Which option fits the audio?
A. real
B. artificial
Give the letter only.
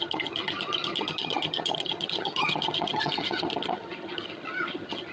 B